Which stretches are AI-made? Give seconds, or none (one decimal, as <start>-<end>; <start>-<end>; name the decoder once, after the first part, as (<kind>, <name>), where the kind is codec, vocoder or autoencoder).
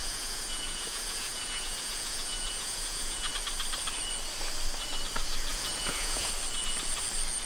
0.0-3.3 (vocoder, Vocos); 5.5-6.3